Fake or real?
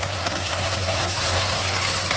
fake